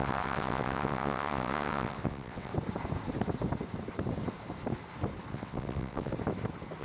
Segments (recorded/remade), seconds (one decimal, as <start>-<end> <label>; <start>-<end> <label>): 0.0-2.5 remade; 2.5-5.3 recorded; 5.3-6.1 remade; 6.1-6.8 recorded